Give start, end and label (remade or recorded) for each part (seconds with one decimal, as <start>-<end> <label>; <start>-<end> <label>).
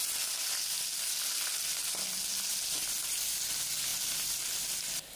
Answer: 0.0-5.2 recorded